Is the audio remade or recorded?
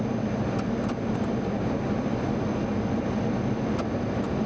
recorded